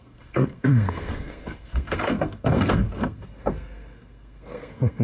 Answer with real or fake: fake